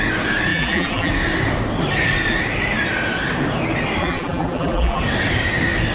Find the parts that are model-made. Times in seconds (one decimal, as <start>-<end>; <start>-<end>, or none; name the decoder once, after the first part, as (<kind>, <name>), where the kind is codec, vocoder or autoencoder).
0.5-1.1 (vocoder, BigVGAN v2); 4.0-5.0